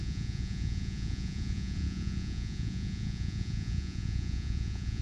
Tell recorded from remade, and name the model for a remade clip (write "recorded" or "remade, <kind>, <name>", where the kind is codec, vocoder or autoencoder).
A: remade, vocoder, Vocos